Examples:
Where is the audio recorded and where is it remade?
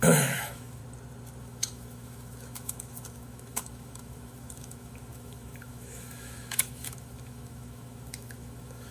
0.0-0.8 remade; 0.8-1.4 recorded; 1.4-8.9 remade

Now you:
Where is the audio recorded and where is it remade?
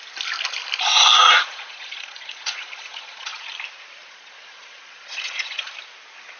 0.0-1.2 recorded; 1.2-3.5 remade; 3.5-4.0 recorded; 4.0-5.7 remade; 5.7-6.4 recorded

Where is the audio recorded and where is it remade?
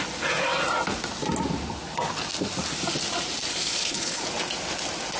0.0-3.5 recorded; 3.5-4.2 remade; 4.2-5.2 recorded